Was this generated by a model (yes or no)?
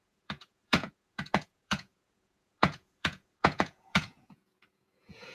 yes